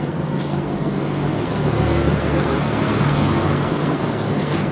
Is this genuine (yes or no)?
no